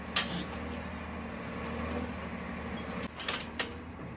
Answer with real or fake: real